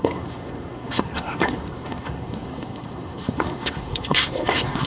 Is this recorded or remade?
remade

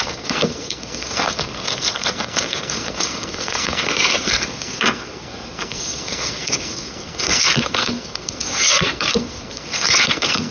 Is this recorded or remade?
remade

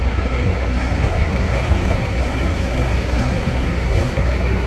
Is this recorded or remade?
remade